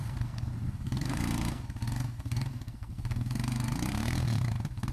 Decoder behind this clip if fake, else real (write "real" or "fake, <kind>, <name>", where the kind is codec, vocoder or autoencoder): fake, codec, SNAC